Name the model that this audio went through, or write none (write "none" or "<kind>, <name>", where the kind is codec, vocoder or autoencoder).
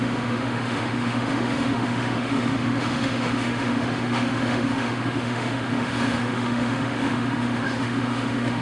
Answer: autoencoder, DAC-VAE